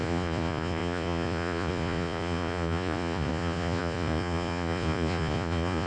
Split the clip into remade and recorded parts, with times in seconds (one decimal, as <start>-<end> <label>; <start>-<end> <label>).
0.0-5.9 remade